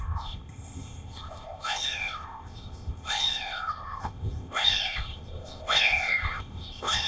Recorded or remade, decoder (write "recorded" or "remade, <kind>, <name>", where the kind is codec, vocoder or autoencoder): remade, codec, ZipCodec